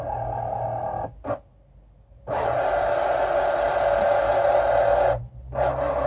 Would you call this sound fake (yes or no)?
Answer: no